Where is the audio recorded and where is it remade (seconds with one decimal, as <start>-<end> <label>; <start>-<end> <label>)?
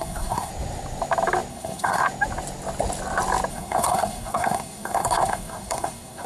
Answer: 0.0-0.5 remade; 0.5-1.5 recorded; 1.5-2.0 remade; 2.0-3.5 recorded; 3.5-6.3 remade